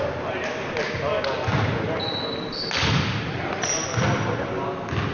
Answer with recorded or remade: recorded